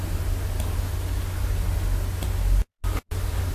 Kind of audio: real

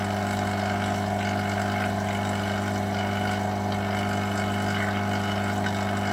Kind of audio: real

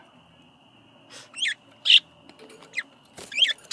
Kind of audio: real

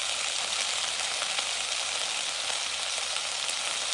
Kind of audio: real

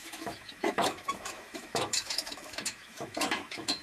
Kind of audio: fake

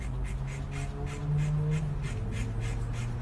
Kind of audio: real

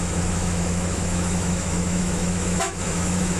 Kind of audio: fake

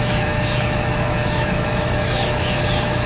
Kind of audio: fake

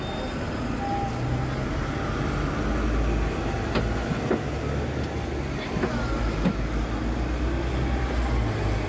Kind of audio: real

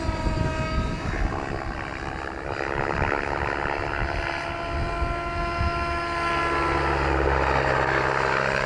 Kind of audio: real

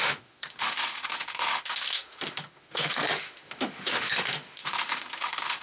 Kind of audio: fake